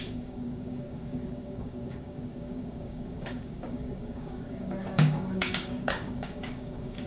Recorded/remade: remade